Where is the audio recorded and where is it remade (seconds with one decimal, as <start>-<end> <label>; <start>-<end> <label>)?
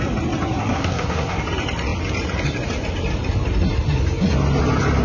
0.0-0.6 recorded; 0.6-1.4 remade; 1.4-5.0 recorded